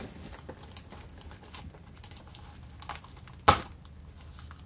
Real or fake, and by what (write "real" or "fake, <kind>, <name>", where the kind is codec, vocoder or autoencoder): real